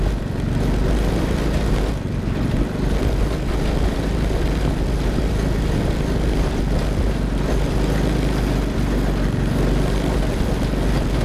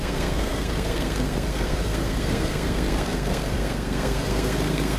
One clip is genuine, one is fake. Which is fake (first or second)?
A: second